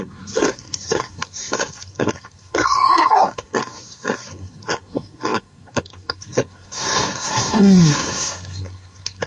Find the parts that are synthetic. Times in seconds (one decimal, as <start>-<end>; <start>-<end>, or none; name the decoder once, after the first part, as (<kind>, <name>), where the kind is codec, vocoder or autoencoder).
0.0-9.3 (codec, SNAC)